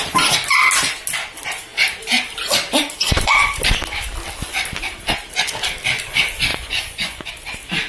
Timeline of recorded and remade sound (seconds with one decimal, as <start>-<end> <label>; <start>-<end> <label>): 0.0-6.5 recorded; 6.5-7.3 remade; 7.3-7.9 recorded